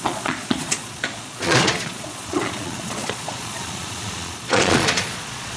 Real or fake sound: fake